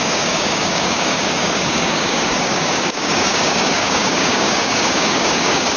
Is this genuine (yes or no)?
no